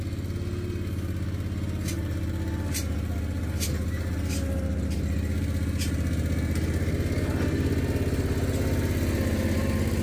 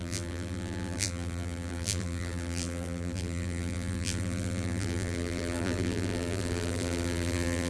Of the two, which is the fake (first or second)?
second